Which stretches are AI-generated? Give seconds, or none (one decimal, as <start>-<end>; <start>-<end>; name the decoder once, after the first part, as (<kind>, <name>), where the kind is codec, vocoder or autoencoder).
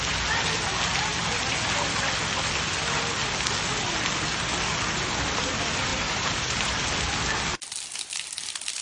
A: 5.9-6.8 (vocoder, BigVGAN v2)